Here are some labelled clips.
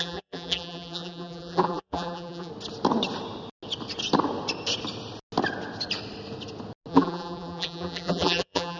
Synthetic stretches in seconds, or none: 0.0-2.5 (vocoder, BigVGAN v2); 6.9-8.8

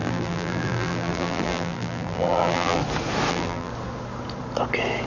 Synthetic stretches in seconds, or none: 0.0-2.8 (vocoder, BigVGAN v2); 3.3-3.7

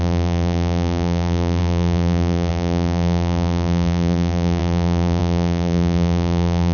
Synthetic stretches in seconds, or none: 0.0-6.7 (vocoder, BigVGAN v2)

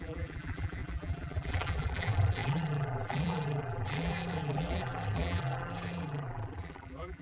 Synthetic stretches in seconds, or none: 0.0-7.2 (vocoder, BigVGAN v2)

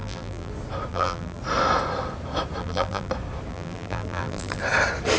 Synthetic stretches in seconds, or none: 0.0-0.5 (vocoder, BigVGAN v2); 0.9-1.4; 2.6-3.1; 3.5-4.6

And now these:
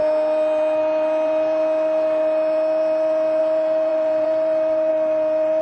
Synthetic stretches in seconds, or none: 3.9-4.9 (vocoder, BigVGAN v2)

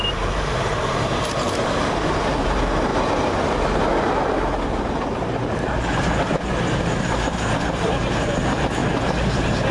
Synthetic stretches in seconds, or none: 0.0-2.9 (vocoder, BigVGAN v2); 7.0-8.8